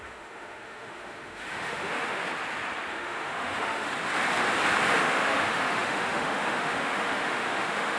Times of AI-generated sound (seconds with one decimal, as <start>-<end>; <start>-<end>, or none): 0.0-2.2; 2.9-3.9; 5.0-8.0